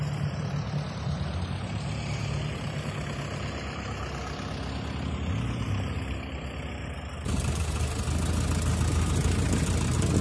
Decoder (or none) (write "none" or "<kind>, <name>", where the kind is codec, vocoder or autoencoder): none